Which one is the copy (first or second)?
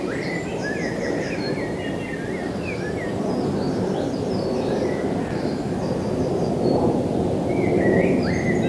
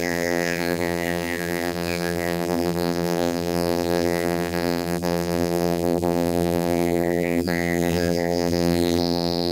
second